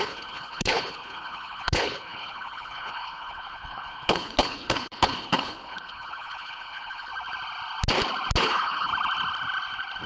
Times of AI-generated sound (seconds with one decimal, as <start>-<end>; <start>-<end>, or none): 0.0-7.1; 8.4-8.9